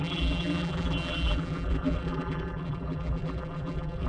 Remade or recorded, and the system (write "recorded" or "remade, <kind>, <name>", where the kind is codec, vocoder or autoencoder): remade, vocoder, BigVGAN v2